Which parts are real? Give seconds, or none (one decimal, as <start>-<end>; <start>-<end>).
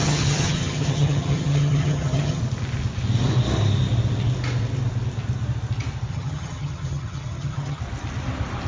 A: 2.4-6.1; 7.8-8.7